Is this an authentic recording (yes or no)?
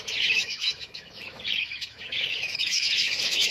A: no